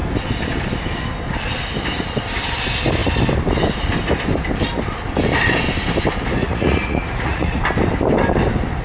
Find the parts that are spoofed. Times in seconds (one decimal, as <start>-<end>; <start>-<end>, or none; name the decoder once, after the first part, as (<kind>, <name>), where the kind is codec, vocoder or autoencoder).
6.4-7.6 (vocoder, Vocos)